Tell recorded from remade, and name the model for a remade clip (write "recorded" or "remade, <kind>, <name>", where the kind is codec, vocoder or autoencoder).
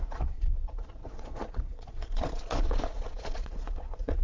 remade, vocoder, Vocos